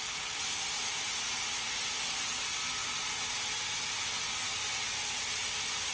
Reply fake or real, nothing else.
real